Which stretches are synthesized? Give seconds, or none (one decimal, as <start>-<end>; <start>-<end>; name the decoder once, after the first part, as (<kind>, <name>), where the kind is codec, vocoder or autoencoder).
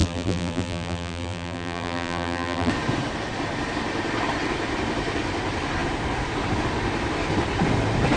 0.0-2.7 (vocoder, BigVGAN v2)